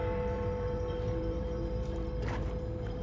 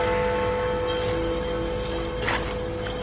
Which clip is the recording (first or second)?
second